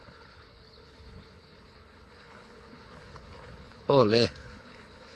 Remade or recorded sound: remade